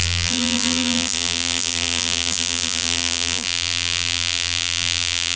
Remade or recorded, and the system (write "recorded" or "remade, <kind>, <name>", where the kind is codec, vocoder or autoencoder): remade, vocoder, BigVGAN v2